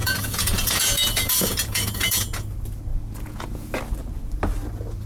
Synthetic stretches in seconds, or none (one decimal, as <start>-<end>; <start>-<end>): 0.0-2.4; 2.9-3.7